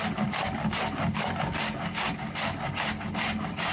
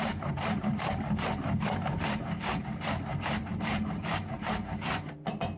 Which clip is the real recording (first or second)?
first